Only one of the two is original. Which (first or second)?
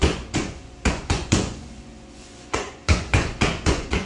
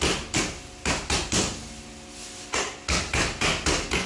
second